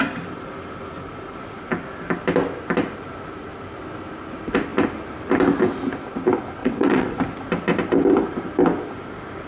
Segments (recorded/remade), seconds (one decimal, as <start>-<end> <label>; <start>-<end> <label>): 0.0-6.6 recorded; 6.6-7.2 remade; 7.2-9.5 recorded